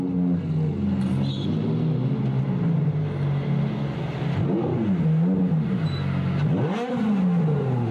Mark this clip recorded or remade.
recorded